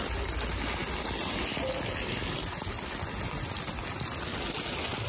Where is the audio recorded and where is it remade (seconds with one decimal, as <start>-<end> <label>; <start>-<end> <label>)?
0.0-5.1 recorded